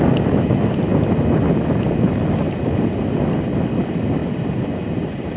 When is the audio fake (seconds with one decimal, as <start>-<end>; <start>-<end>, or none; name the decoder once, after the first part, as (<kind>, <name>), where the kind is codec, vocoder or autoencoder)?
4.2-5.4 (vocoder, BigVGAN v2)